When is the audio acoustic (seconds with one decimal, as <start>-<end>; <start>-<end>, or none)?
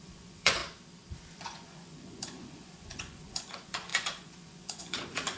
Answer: 0.6-1.3